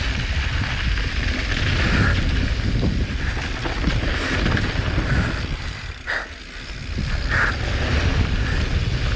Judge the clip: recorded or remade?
recorded